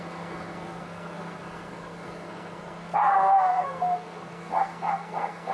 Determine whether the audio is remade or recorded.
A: remade